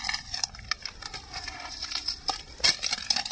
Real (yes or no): yes